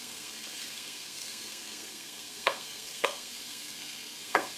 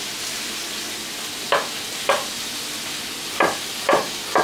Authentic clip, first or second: second